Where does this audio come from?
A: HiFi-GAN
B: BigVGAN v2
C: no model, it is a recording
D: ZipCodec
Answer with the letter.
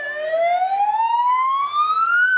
C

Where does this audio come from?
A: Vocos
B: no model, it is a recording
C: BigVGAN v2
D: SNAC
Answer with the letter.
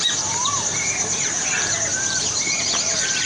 C